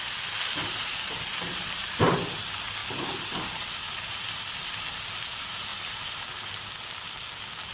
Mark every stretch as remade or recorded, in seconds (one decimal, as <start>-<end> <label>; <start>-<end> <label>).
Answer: 0.0-0.6 recorded; 0.6-2.4 remade; 2.4-2.8 recorded; 2.8-3.6 remade; 3.6-7.7 recorded